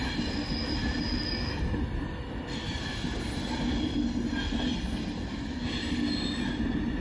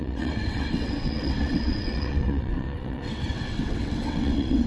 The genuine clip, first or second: first